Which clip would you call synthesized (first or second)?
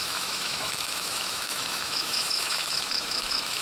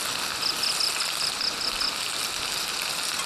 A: first